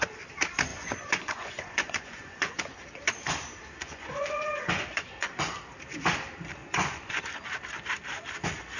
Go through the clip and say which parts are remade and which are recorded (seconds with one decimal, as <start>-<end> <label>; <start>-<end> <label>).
0.0-0.7 recorded; 0.7-2.6 remade; 2.6-3.8 recorded; 3.8-5.6 remade; 5.6-6.6 recorded; 6.6-7.2 remade; 7.2-8.8 recorded

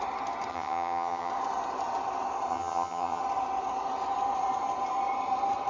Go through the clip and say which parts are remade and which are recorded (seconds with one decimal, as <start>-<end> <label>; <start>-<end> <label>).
0.0-0.5 recorded; 0.5-1.3 remade; 1.3-2.5 recorded; 2.5-3.2 remade; 3.2-5.7 recorded

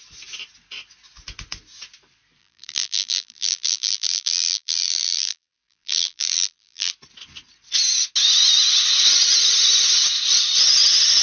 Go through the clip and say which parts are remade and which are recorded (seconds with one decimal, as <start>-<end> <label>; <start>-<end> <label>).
0.0-2.4 recorded; 2.4-6.9 remade; 6.9-11.2 recorded